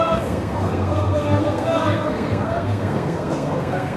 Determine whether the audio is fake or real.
fake